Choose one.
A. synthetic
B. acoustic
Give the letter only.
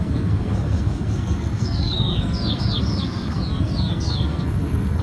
A